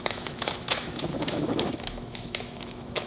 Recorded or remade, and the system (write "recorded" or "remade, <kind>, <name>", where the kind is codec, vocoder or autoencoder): remade, autoencoder, DAC-VAE